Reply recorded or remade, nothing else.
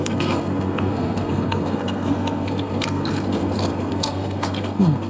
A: remade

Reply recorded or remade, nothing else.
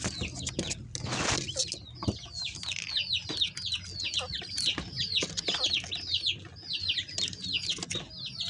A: recorded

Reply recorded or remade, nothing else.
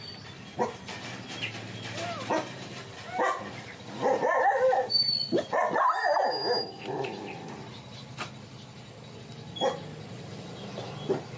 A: recorded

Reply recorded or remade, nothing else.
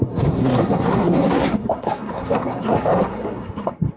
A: remade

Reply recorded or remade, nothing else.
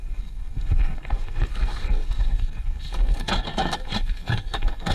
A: remade